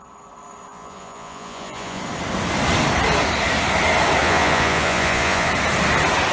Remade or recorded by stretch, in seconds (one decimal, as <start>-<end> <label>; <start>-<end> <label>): 0.0-0.7 recorded; 0.7-2.0 remade; 2.0-4.2 recorded; 4.2-5.5 remade; 5.5-6.3 recorded